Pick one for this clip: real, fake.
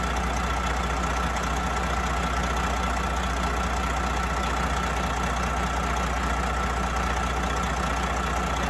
real